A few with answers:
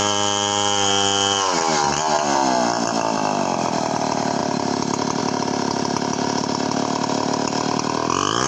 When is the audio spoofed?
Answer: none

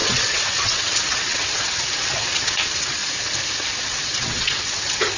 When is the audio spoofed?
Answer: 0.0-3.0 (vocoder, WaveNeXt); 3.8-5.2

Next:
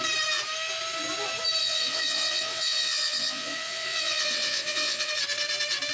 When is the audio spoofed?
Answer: 1.6-5.1 (vocoder, WaveNeXt)